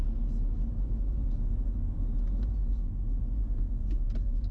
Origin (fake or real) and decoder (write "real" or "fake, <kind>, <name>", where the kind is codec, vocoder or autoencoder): real